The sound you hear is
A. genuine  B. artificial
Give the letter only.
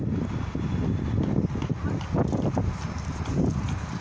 A